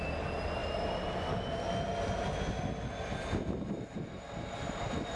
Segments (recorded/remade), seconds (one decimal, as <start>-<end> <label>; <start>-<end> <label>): 0.0-5.2 recorded